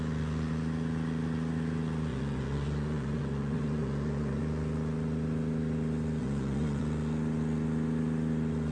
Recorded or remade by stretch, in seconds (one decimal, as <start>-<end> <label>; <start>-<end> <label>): 0.0-2.1 recorded; 2.1-4.4 remade; 4.4-6.2 recorded; 6.2-6.8 remade; 6.8-8.7 recorded